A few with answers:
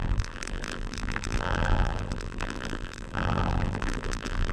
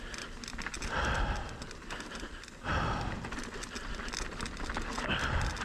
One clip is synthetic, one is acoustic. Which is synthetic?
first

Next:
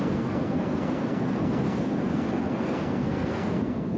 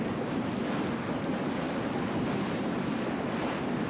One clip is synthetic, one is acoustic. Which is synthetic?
first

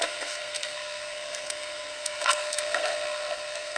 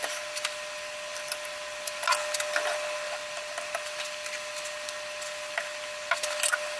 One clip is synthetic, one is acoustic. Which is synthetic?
first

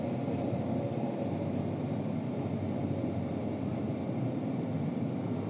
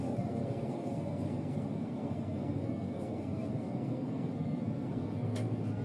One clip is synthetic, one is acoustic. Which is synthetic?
second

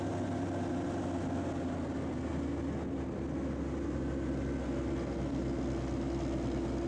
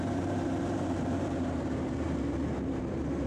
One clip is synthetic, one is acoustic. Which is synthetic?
second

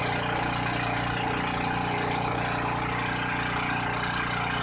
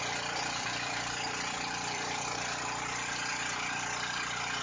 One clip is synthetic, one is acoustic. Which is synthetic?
second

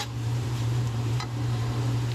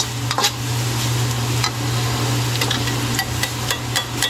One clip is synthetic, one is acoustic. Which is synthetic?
first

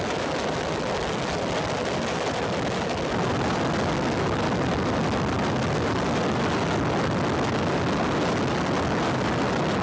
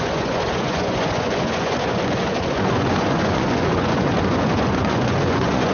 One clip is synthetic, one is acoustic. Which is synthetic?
second